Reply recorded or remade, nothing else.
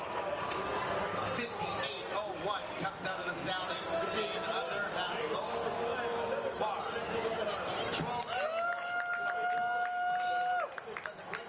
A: recorded